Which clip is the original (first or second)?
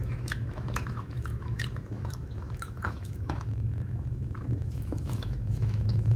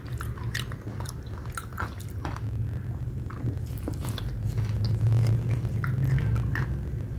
second